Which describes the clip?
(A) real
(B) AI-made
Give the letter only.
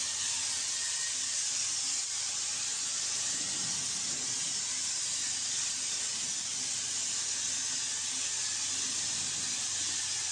A